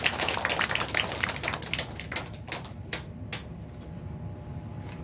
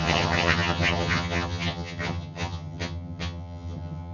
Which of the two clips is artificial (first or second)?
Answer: second